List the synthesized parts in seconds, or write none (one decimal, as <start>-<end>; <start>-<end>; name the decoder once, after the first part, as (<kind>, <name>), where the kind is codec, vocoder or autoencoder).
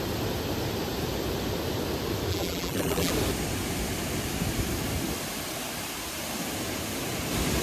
2.3-3.1 (vocoder, BigVGAN v2)